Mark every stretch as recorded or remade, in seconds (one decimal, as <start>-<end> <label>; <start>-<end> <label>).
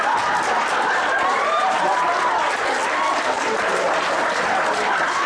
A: 0.0-1.3 recorded; 1.3-2.2 remade; 2.2-5.3 recorded